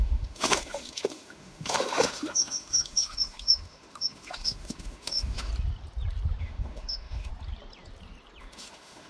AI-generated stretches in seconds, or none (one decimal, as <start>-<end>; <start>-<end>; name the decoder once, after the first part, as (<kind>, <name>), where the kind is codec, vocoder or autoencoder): 0.0-5.5 (autoencoder, DAC-VAE); 6.4-7.3; 8.4-9.1